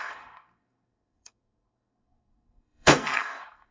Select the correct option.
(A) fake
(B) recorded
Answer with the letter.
A